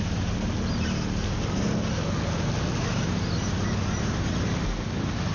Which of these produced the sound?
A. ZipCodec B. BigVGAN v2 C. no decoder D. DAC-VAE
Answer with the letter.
C